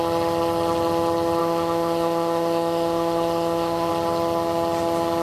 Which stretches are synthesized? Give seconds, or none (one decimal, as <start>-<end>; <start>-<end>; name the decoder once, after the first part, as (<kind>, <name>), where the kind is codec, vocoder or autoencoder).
1.4-3.9 (autoencoder, DAC-VAE)